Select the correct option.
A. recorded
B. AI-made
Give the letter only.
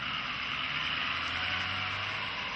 A